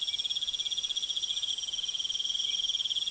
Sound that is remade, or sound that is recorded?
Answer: recorded